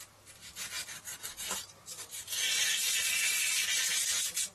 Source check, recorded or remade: recorded